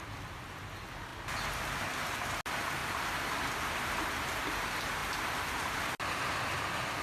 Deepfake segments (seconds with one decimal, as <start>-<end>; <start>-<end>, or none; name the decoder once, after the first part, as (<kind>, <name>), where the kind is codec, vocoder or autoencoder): none